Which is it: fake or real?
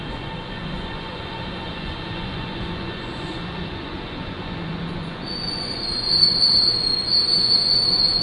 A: fake